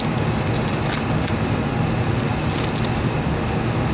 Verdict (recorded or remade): recorded